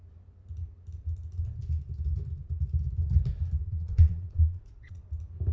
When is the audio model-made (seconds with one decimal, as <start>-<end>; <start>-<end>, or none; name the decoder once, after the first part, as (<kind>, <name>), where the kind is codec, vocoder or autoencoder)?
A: 3.6-5.0 (vocoder, Vocos)